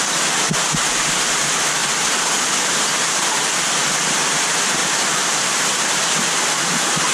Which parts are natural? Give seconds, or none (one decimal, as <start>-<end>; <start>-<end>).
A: 0.0-4.8; 6.3-7.1